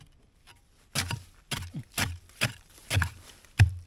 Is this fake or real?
real